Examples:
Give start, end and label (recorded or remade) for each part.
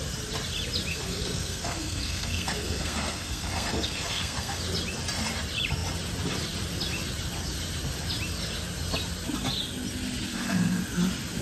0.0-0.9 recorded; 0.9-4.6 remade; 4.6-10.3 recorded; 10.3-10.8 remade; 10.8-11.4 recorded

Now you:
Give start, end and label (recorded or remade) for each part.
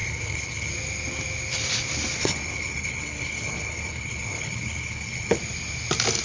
0.0-0.7 remade; 0.7-2.2 recorded; 2.2-5.4 remade; 5.4-6.2 recorded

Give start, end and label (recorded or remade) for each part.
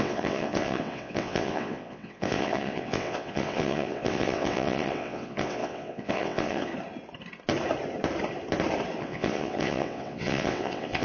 0.0-6.7 remade; 6.7-9.0 recorded; 9.0-11.0 remade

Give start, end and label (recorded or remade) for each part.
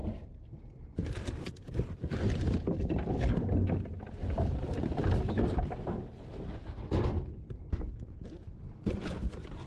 0.0-9.7 recorded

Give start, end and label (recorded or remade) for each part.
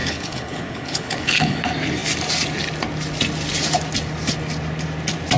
0.0-1.6 remade; 1.6-5.4 recorded